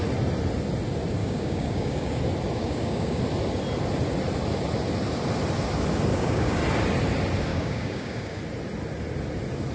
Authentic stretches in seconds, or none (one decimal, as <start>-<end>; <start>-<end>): 0.0-1.2; 2.2-2.6; 3.2-6.1; 6.6-7.5; 8.4-9.7